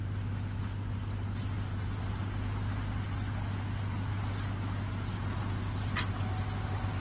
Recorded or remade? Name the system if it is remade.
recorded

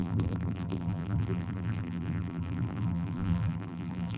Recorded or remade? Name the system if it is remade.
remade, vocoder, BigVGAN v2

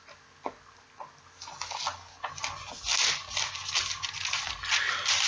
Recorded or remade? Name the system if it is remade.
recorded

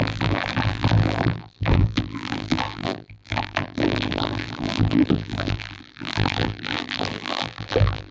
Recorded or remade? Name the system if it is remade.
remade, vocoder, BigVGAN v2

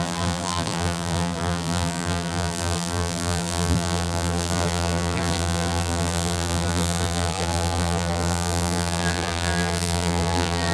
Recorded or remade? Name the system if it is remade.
remade, vocoder, BigVGAN v2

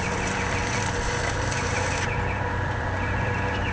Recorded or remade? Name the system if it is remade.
remade, vocoder, BigVGAN v2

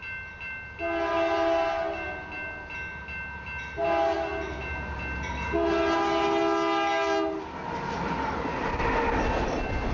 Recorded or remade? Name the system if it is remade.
recorded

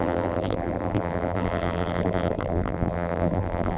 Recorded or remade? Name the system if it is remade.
remade, vocoder, BigVGAN v2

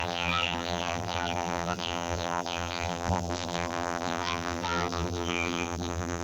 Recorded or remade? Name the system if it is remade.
remade, vocoder, BigVGAN v2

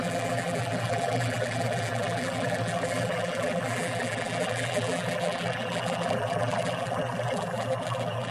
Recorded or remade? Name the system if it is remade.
remade, vocoder, BigVGAN v2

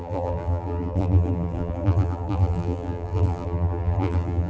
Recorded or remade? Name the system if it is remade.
remade, vocoder, BigVGAN v2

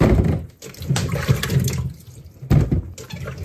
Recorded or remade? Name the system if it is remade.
recorded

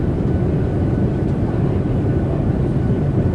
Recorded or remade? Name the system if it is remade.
remade, vocoder, BigVGAN v2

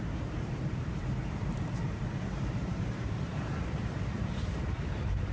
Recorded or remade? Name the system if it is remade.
remade, vocoder, BigVGAN v2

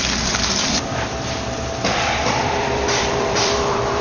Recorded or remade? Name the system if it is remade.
remade, vocoder, BigVGAN v2